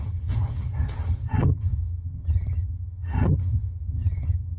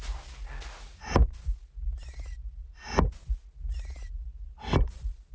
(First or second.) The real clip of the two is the second